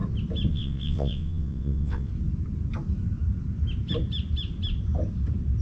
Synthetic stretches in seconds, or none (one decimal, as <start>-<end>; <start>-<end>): 0.5-2.1